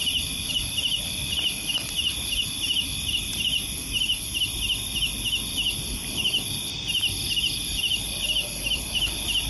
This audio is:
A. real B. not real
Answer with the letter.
B